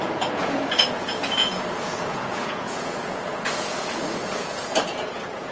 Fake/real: fake